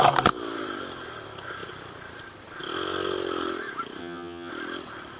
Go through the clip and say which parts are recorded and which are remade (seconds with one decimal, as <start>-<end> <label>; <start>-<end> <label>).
0.0-4.0 recorded; 4.0-4.5 remade; 4.5-5.2 recorded